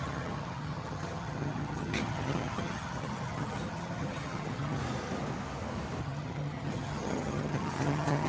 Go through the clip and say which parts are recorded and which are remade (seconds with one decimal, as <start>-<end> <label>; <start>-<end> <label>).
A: 0.0-4.8 remade; 4.8-6.0 recorded; 6.0-8.3 remade